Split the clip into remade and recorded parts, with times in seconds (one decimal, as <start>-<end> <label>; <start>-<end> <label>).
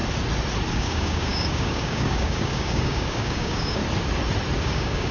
0.0-0.7 recorded; 0.7-3.8 remade; 3.8-4.6 recorded; 4.6-5.1 remade